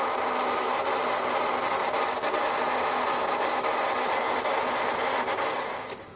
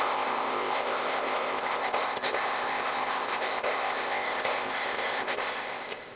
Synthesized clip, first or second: second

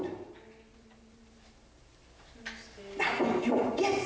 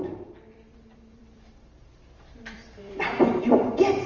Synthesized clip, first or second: second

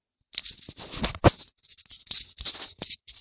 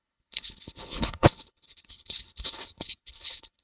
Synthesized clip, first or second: second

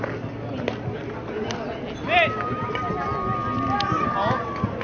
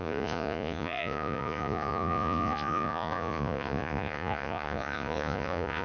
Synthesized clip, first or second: second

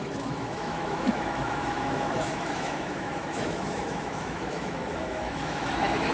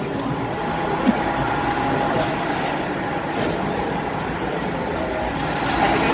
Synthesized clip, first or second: first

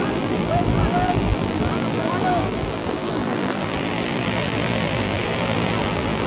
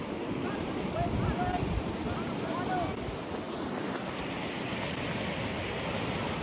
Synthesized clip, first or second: first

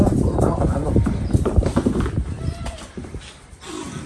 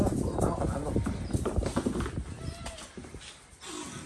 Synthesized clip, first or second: first